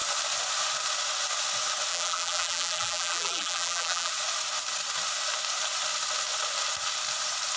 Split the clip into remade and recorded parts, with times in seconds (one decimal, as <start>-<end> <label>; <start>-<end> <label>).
0.0-1.9 recorded; 1.9-4.1 remade; 4.1-7.6 recorded

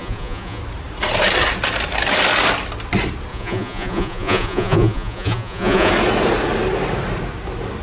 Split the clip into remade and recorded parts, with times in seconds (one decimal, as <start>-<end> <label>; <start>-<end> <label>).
0.0-0.6 remade; 0.6-3.3 recorded; 3.3-5.9 remade; 5.9-7.8 recorded

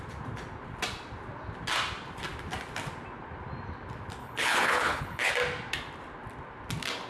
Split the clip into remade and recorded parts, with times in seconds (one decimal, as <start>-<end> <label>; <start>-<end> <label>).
0.0-4.2 recorded; 4.2-5.3 remade; 5.3-7.1 recorded

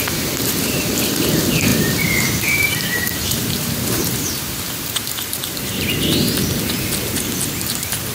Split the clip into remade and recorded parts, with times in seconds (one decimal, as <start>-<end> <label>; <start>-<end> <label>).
0.0-1.7 recorded; 1.7-5.9 remade; 5.9-8.1 recorded